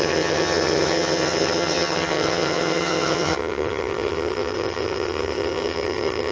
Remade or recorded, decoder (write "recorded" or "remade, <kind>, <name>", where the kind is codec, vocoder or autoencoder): remade, vocoder, HiFi-GAN